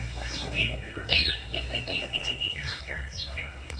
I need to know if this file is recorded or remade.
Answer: remade